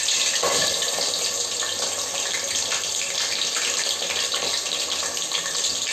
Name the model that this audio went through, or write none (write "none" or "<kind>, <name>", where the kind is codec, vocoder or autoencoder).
none